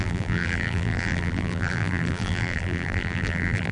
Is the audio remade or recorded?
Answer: remade